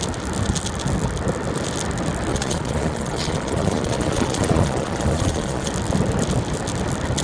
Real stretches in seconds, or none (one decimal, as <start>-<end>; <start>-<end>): 0.0-2.3; 5.7-7.2